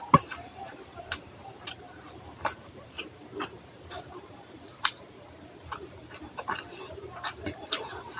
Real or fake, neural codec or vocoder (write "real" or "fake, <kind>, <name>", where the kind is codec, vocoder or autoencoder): fake, vocoder, BigVGAN v2